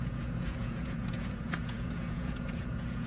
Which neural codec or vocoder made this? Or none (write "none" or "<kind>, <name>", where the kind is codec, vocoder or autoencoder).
vocoder, Vocos